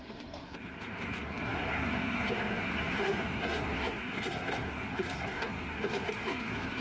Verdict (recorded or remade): remade